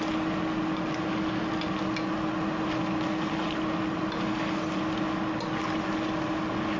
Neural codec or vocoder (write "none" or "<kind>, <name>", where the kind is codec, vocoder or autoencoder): none